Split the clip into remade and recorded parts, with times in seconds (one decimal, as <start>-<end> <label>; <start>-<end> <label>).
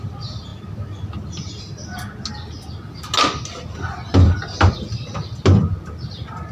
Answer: 0.0-6.5 recorded